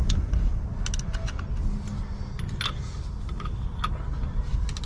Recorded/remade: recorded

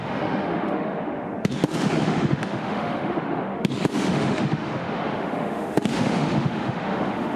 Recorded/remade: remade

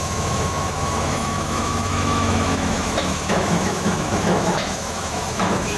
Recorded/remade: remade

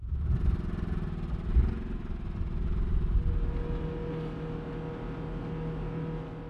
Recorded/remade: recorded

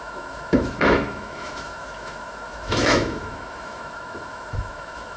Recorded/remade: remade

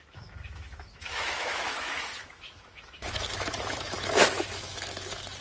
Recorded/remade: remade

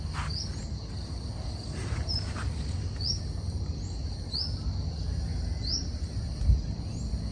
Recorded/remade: recorded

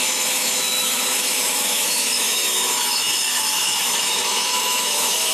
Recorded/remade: remade